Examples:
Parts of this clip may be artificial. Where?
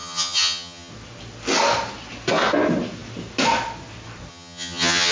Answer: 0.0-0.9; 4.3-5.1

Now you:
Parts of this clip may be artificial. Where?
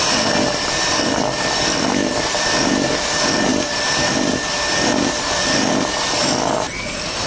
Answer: none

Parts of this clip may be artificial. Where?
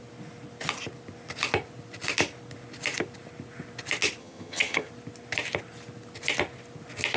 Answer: 4.2-4.9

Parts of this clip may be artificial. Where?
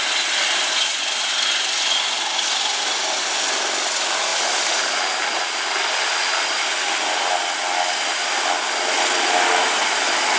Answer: none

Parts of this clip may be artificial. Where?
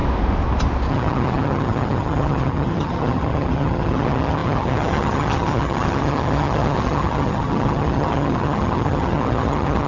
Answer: 0.9-9.9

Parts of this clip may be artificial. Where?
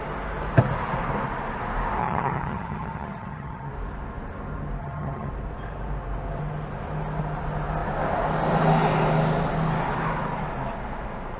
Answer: 2.0-3.7; 4.8-5.3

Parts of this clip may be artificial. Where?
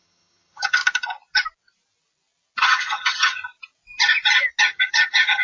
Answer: 0.0-0.8; 2.6-3.4; 4.6-5.4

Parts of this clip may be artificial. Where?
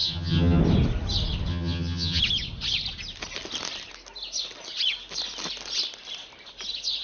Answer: 0.0-0.6; 1.5-2.2